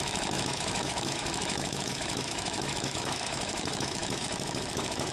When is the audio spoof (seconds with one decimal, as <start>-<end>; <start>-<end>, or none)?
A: 0.0-5.1